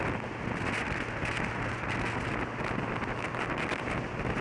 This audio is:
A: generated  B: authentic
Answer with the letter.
B